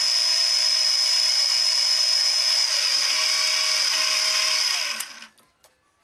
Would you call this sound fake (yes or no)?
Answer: no